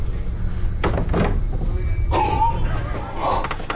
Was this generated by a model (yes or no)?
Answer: no